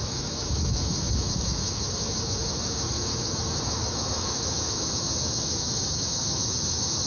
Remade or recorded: remade